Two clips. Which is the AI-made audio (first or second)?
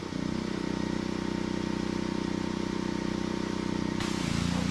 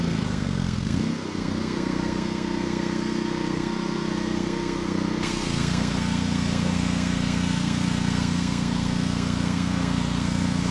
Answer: second